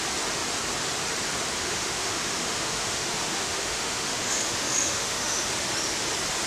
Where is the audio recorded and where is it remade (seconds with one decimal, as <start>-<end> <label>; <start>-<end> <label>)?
0.0-1.6 recorded; 1.6-5.5 remade; 5.5-6.5 recorded